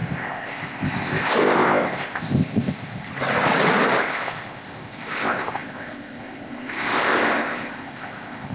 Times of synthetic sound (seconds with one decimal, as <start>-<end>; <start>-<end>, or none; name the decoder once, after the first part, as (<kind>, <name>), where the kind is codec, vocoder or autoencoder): 0.0-3.1 (codec, ZipCodec); 4.0-8.5